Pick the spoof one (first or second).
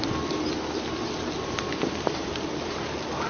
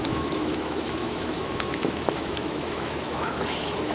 second